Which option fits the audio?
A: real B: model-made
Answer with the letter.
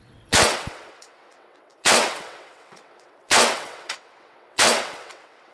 B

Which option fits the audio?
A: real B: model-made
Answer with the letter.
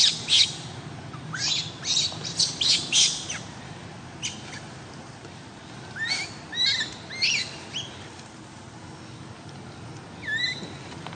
A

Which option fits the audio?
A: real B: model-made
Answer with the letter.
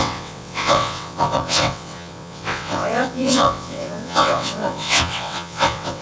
B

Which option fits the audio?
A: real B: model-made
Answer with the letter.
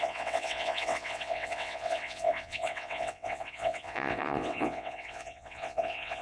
B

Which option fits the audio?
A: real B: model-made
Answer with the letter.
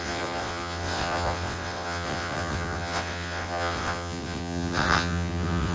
B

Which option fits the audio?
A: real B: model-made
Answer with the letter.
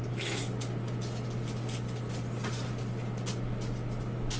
A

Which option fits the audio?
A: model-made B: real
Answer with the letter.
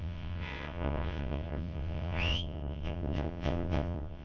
A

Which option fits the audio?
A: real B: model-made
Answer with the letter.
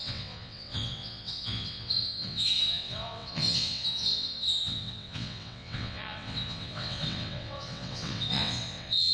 B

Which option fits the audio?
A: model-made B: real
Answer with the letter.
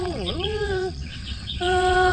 A